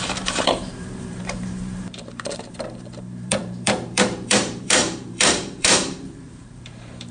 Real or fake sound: fake